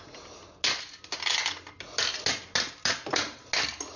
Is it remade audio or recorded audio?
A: recorded